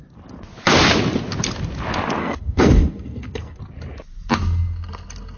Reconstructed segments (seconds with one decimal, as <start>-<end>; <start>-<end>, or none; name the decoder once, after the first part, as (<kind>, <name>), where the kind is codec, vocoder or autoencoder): 2.2-3.6 (codec, SNAC)